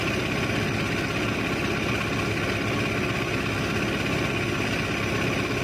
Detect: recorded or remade recorded